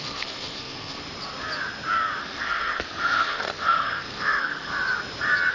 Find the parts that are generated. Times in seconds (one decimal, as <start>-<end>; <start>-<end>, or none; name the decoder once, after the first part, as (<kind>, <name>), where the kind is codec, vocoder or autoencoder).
0.0-1.0 (codec, SNAC); 2.2-4.7